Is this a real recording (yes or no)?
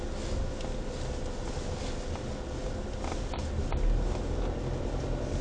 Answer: yes